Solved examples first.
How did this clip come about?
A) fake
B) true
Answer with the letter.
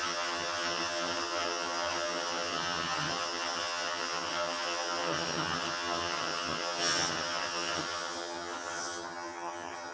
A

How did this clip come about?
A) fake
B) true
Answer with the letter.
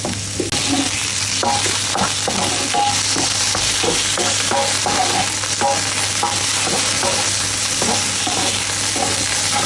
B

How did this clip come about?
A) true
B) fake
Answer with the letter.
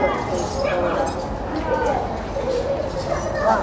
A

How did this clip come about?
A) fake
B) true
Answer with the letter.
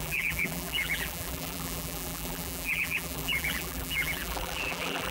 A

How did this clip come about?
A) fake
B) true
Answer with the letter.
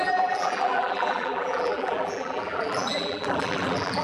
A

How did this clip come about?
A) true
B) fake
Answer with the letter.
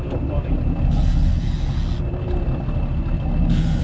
A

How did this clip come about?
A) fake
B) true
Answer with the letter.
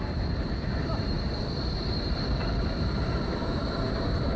A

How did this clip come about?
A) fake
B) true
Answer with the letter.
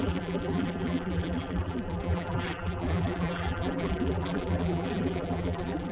A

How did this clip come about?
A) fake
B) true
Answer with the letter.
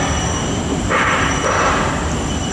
A